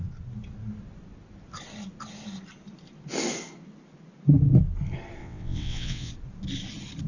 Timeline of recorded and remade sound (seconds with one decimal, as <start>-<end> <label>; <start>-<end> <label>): 0.0-5.2 recorded; 5.2-6.1 remade; 6.1-7.1 recorded